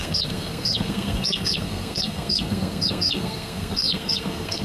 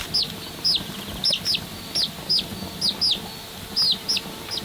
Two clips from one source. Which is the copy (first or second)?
first